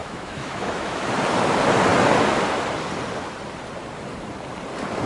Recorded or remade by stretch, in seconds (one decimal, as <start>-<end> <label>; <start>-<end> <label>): 0.0-1.1 remade; 1.1-5.1 recorded